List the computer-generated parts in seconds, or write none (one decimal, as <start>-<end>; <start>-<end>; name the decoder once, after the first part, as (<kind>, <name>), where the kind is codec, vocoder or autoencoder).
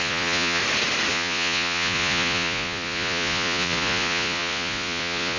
0.0-0.6 (vocoder, Vocos); 1.1-5.4